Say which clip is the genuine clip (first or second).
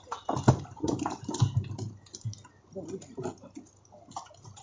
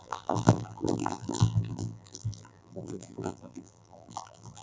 first